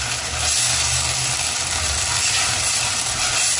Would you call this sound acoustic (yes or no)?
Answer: yes